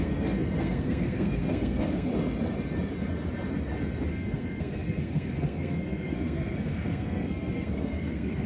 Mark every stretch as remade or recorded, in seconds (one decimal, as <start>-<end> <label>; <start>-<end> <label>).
0.0-2.1 remade; 2.1-4.1 recorded; 4.1-8.5 remade